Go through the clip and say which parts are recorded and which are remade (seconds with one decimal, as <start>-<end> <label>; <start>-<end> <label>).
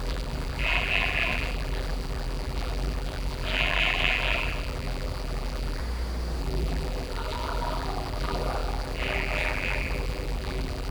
0.0-5.8 remade; 5.8-6.4 recorded; 6.4-10.9 remade